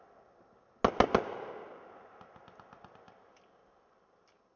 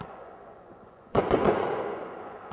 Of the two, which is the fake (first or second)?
second